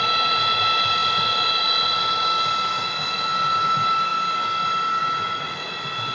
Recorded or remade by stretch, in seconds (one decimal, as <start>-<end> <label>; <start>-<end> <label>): 0.0-6.1 recorded